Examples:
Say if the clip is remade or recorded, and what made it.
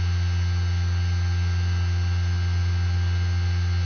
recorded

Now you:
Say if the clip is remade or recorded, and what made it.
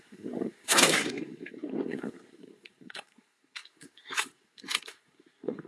remade, codec, SNAC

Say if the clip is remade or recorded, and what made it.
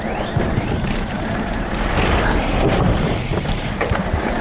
remade, vocoder, BigVGAN v2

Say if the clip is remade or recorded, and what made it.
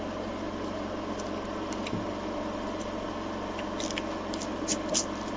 recorded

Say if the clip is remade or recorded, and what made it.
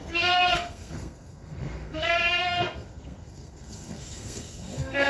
remade, codec, SNAC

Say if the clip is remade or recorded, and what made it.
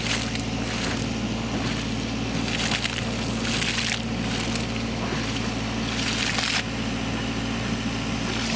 recorded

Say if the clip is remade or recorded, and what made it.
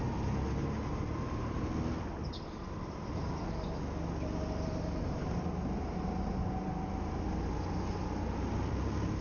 recorded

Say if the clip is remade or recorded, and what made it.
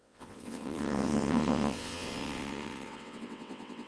remade, vocoder, WaveNeXt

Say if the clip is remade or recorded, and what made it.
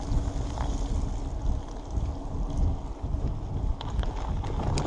recorded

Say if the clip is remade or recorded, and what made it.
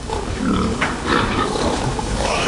remade, codec, DAC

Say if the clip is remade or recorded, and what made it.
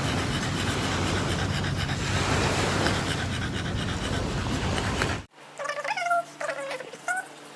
recorded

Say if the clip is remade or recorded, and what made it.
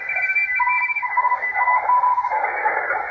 remade, codec, DAC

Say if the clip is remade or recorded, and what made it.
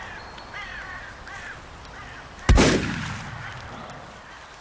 recorded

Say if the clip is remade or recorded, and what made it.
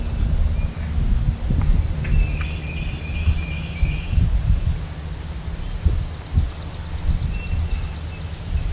recorded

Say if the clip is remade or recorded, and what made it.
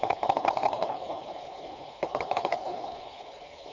remade, codec, HILCodec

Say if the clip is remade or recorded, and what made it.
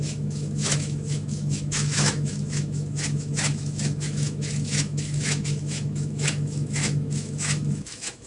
remade, autoencoder, DAC-VAE